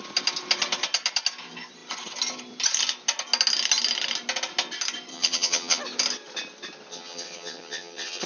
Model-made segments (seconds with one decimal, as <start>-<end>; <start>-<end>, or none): 5.1-5.8; 6.9-8.3